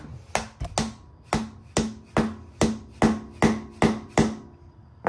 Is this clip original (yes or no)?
yes